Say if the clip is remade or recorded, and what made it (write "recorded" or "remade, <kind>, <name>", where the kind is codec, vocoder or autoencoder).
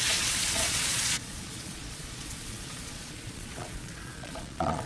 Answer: remade, vocoder, Vocos